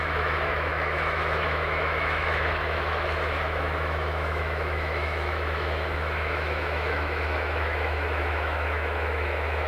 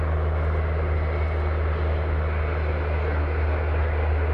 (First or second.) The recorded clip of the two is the second